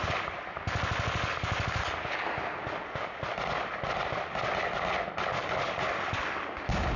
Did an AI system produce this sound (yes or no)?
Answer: no